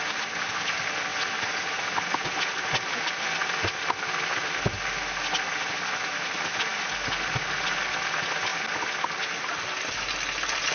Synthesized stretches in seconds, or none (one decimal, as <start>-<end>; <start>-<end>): none